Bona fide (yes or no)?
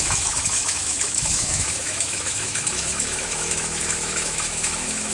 no